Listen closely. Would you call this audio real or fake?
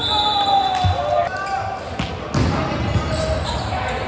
real